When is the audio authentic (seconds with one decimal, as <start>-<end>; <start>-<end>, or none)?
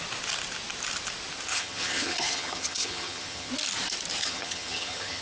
0.0-1.5; 3.5-4.2